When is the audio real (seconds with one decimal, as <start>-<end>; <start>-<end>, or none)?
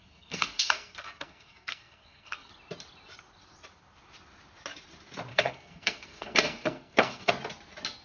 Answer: 2.5-5.3; 7.3-8.0